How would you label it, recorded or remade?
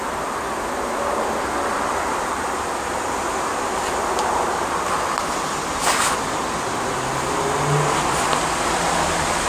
recorded